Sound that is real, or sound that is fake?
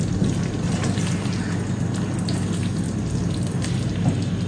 real